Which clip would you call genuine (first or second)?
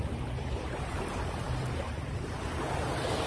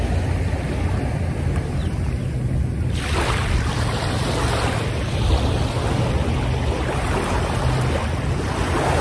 second